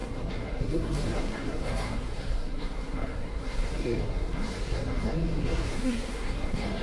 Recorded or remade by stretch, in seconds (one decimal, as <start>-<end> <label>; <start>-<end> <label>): 0.0-6.8 remade

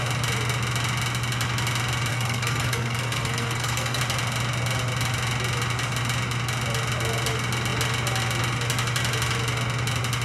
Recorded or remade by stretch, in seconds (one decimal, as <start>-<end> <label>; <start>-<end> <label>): 0.0-2.1 recorded; 2.1-4.0 remade; 4.0-10.2 recorded

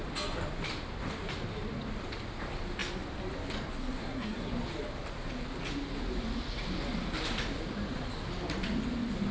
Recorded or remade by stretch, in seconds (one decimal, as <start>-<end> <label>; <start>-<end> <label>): 0.0-3.8 recorded; 3.8-4.5 remade; 4.5-9.3 recorded

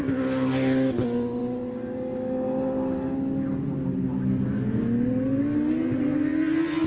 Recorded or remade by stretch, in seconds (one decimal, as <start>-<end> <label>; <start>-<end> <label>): 0.0-6.9 recorded

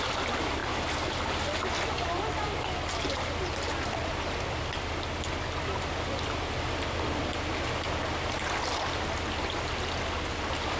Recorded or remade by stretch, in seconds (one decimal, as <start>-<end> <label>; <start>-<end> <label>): 0.0-10.8 recorded

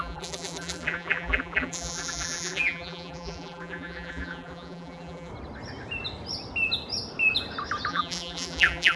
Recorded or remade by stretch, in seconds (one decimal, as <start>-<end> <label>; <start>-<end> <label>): 0.0-5.3 remade; 5.3-7.9 recorded; 7.9-9.0 remade

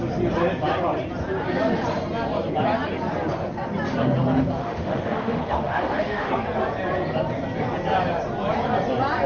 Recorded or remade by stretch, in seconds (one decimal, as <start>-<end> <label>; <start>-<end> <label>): 0.0-4.6 recorded; 4.6-6.3 remade; 6.3-9.3 recorded